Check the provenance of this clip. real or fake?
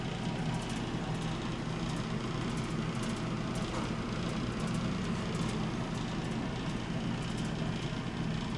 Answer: real